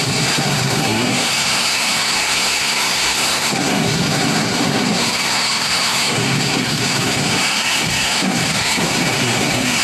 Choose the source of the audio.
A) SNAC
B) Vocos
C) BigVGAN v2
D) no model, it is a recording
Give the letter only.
A